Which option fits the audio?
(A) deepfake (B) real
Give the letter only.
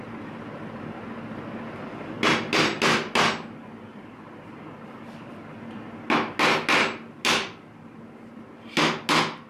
B